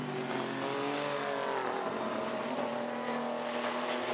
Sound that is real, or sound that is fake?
real